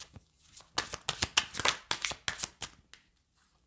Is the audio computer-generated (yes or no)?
no